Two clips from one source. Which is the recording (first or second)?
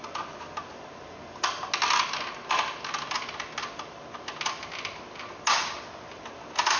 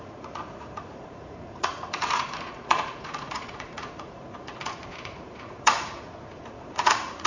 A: first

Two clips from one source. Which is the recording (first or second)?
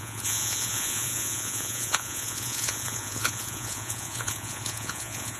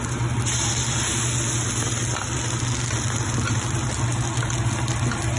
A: second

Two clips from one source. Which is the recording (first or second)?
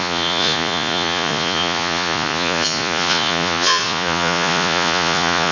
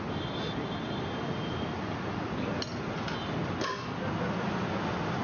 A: second